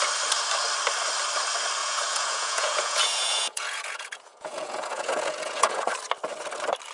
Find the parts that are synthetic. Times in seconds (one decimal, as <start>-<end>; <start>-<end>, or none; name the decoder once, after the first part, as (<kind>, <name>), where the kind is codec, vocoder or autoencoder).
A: 1.8-5.9 (vocoder, Vocos)